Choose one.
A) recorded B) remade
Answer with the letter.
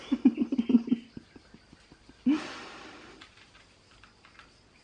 A